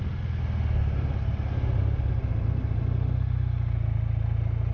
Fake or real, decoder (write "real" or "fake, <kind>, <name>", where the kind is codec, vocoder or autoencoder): real